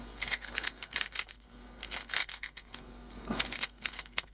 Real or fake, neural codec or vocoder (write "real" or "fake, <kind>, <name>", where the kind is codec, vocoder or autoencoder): fake, codec, SNAC